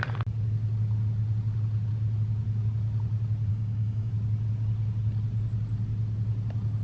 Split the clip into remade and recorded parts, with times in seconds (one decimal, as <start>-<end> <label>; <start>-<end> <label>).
0.0-3.5 recorded; 3.5-4.1 remade; 4.1-6.8 recorded